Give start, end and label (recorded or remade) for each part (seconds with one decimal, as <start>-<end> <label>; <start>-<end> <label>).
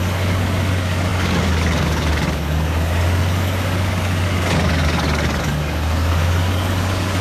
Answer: 0.0-7.2 remade